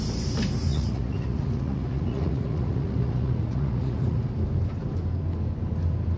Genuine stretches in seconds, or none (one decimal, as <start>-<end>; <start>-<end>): 0.0-0.7; 4.2-6.2